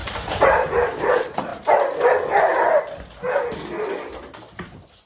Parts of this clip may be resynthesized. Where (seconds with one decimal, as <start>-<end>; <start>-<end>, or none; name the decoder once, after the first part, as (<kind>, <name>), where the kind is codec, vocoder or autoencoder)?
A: 0.0-1.5 (vocoder, BigVGAN v2); 4.4-5.1